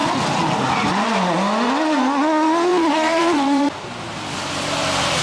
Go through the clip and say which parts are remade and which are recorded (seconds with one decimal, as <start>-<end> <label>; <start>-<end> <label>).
0.0-2.7 recorded; 2.7-3.7 remade; 3.7-5.2 recorded